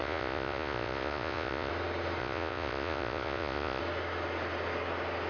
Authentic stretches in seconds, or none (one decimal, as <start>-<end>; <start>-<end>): 1.7-2.2; 3.8-5.3